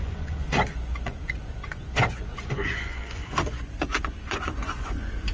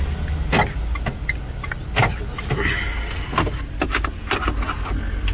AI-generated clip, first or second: first